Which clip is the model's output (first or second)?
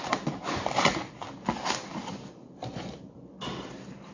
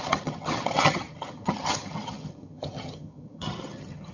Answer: second